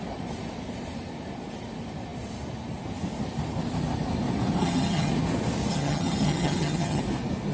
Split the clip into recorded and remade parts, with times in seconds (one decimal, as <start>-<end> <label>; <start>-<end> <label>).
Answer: 0.0-4.6 recorded; 4.6-5.1 remade; 5.1-5.7 recorded; 5.7-7.0 remade; 7.0-7.5 recorded